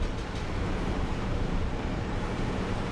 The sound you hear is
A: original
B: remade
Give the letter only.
B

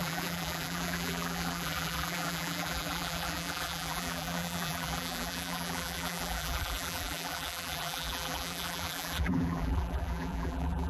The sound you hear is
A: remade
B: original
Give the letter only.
A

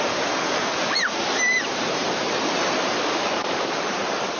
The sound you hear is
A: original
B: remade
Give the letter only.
B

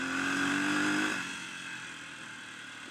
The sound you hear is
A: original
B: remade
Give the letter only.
A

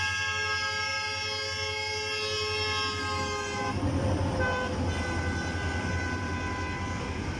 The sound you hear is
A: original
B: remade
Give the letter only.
A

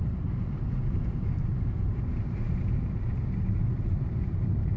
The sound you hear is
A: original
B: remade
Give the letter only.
B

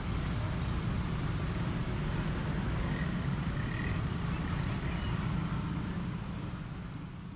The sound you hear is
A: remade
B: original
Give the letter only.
B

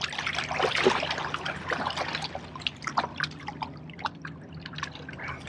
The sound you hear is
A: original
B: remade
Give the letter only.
A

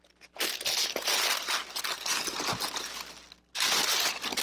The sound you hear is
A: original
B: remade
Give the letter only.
A